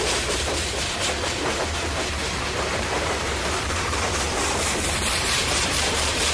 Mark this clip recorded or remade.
remade